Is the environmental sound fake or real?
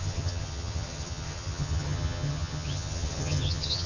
fake